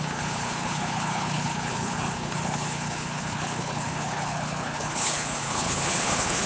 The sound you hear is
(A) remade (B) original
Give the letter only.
A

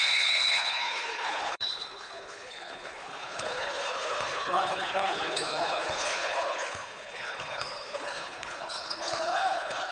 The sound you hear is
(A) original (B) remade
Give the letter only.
B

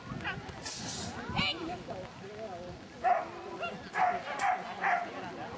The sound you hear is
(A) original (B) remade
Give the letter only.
A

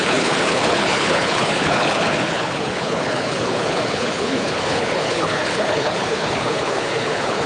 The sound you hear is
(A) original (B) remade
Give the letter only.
B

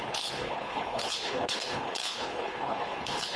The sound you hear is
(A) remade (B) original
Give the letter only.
A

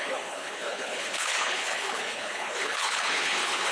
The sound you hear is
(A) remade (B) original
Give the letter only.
A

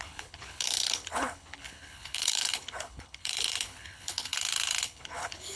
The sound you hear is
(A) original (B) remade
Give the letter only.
B